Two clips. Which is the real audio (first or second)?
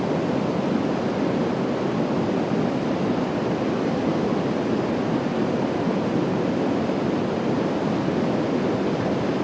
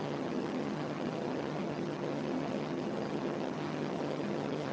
first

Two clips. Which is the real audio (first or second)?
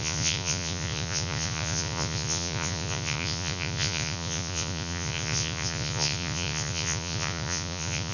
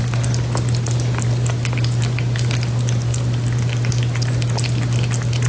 second